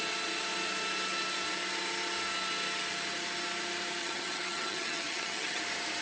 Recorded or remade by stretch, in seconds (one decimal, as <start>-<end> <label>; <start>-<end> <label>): 0.0-4.0 recorded; 4.0-5.6 remade; 5.6-6.0 recorded